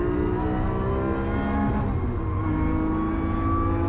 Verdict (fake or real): real